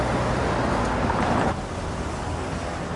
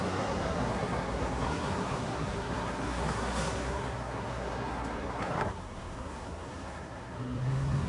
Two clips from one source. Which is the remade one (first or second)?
second